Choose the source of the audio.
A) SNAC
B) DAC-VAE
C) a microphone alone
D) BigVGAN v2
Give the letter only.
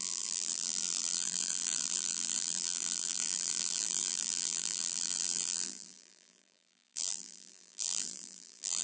D